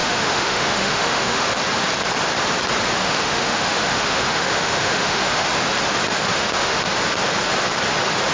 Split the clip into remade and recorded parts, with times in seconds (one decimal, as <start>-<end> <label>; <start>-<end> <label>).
0.0-1.5 remade; 1.5-3.0 recorded; 3.0-5.5 remade; 5.5-6.2 recorded; 6.2-6.8 remade; 6.8-8.3 recorded